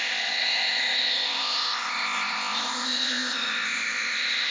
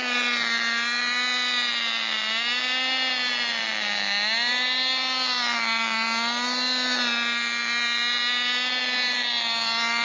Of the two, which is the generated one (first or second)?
first